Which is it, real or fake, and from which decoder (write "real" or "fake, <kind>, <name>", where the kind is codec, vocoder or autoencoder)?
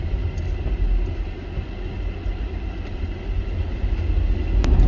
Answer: real